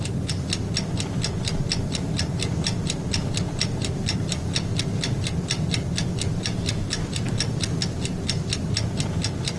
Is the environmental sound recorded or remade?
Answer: recorded